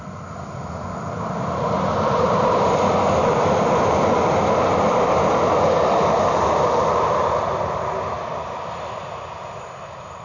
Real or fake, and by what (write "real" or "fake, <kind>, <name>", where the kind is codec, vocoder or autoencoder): real